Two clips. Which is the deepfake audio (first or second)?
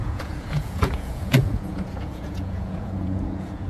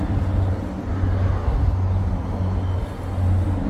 first